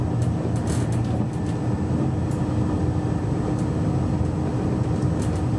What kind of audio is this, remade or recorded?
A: recorded